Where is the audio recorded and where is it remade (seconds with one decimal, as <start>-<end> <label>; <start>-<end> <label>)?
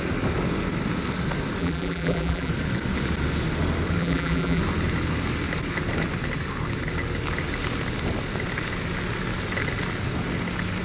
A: 0.0-1.6 recorded; 1.6-2.5 remade; 2.5-4.0 recorded; 4.0-4.6 remade; 4.6-10.8 recorded